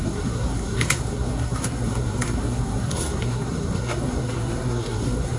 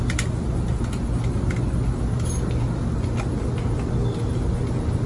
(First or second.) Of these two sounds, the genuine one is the second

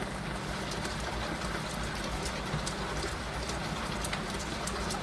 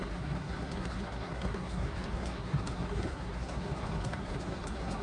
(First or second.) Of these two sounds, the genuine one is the first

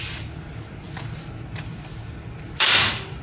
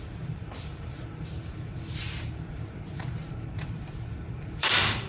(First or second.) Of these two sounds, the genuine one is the first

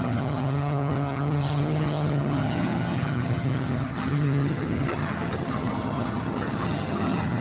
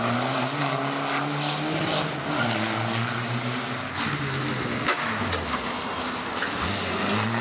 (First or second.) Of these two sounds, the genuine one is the second